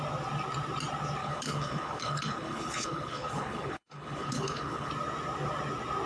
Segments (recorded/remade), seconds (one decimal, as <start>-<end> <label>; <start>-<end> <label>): 0.0-1.2 recorded; 1.2-4.9 remade; 4.9-6.1 recorded